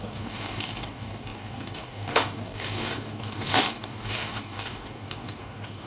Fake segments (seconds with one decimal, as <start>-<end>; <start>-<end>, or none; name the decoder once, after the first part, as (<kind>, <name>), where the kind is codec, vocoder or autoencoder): 0.0-5.9 (codec, DAC)